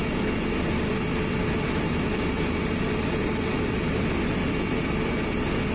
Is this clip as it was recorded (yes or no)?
no